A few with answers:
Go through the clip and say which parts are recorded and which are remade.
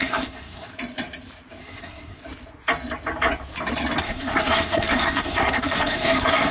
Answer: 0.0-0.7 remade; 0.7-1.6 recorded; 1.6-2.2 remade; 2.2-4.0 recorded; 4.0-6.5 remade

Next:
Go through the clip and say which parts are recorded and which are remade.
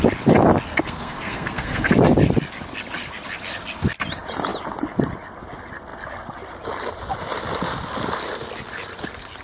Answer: 0.0-0.7 recorded; 0.7-1.9 remade; 1.9-9.4 recorded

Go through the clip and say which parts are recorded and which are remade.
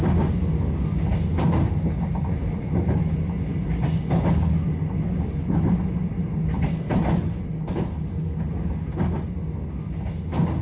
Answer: 0.0-10.6 recorded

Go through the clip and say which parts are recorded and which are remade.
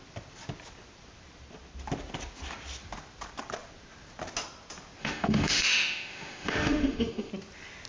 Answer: 0.0-5.0 recorded; 5.0-7.3 remade; 7.3-7.9 recorded